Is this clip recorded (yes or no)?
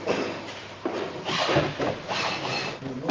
yes